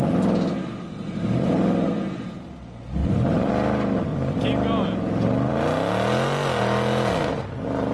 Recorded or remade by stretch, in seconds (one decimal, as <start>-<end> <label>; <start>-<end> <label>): 0.0-3.0 recorded; 3.0-3.5 remade; 3.5-4.1 recorded; 4.1-5.5 remade; 5.5-7.9 recorded